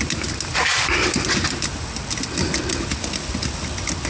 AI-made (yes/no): no